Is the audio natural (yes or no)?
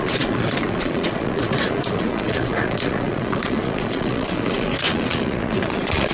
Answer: no